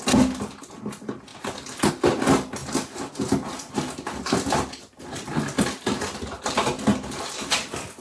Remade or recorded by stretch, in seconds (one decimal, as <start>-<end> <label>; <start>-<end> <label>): 0.0-8.0 recorded